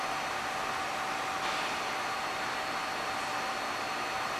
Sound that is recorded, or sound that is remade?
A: recorded